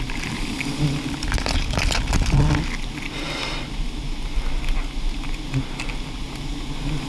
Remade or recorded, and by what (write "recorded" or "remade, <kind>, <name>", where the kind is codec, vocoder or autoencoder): recorded